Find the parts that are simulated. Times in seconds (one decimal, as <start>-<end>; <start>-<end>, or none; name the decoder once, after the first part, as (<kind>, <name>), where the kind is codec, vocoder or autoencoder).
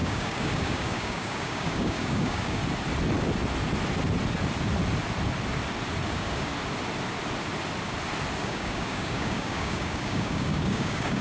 0.0-2.6 (codec, DAC); 6.1-6.5; 8.4-11.2